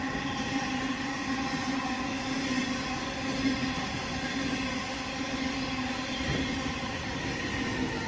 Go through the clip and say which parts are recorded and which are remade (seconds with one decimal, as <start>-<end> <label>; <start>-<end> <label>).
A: 0.0-8.1 recorded